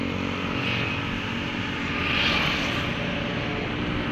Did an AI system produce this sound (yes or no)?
no